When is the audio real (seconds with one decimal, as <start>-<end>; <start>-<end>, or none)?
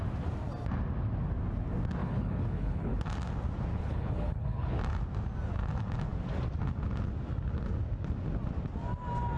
0.0-2.0; 3.0-3.7; 4.8-9.4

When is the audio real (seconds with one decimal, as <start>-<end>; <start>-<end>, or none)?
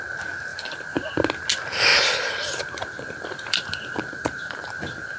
0.0-0.5; 1.1-1.9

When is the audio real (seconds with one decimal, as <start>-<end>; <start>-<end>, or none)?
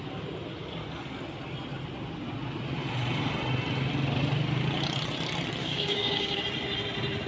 0.0-5.6; 6.4-7.3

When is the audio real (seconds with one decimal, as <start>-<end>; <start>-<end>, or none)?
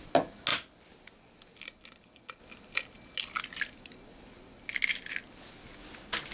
0.0-6.3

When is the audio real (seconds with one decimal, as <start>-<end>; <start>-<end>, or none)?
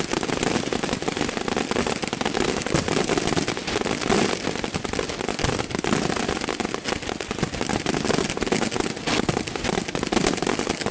0.0-10.9